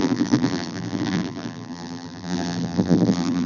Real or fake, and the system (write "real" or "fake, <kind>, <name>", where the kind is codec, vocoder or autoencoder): fake, vocoder, BigVGAN v2